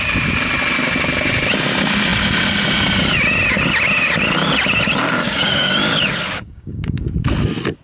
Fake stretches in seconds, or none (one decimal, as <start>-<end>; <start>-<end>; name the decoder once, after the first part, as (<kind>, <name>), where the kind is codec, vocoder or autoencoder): 5.2-7.1 (codec, DAC)